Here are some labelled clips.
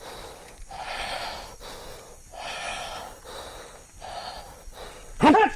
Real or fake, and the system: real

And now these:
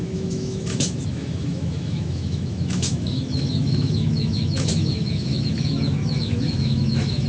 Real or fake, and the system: fake, autoencoder, DAC-VAE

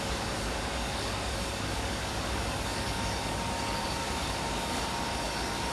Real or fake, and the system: fake, codec, DAC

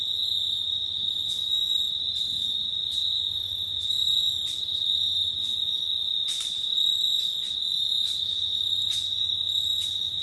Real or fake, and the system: real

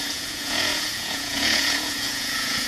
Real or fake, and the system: fake, vocoder, Vocos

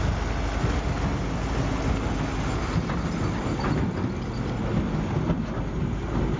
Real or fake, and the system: real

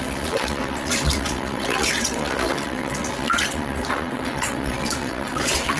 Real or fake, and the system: fake, vocoder, WaveNeXt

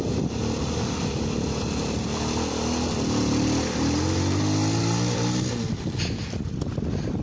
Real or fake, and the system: real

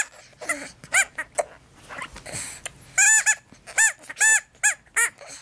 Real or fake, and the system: real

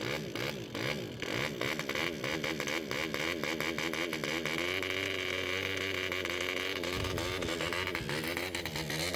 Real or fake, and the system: real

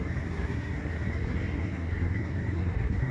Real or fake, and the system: fake, codec, SNAC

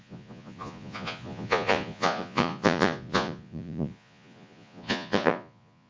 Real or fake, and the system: fake, vocoder, Vocos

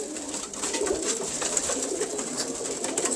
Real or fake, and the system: real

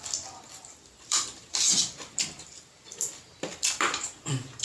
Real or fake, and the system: fake, vocoder, BigVGAN v2